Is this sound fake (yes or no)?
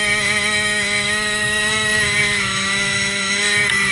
yes